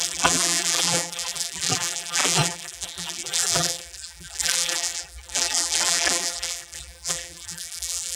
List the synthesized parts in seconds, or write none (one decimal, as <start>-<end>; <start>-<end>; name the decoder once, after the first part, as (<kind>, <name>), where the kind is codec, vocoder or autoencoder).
0.0-8.2 (vocoder, BigVGAN v2)